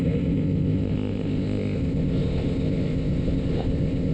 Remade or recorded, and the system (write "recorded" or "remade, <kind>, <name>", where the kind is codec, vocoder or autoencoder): remade, codec, ZipCodec